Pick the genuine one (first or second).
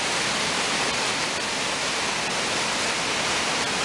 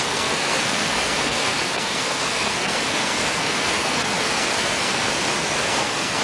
first